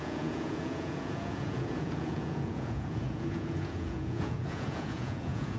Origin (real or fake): fake